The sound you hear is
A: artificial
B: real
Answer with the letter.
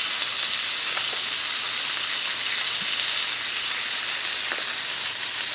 B